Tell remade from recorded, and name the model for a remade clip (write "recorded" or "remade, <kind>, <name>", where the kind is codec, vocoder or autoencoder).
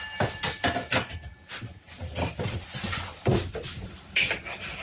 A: recorded